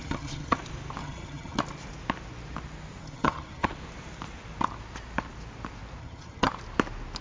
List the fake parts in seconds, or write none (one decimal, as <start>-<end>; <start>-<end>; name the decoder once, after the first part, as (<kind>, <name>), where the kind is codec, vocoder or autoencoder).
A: 0.0-0.6 (vocoder, HiFi-GAN); 1.0-1.6; 3.0-3.7; 6.0-6.5